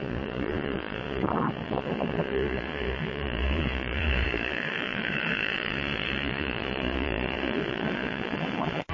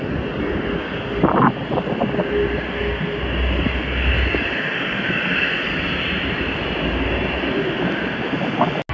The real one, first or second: second